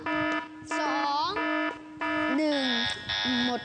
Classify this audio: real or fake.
real